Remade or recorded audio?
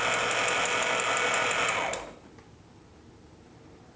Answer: recorded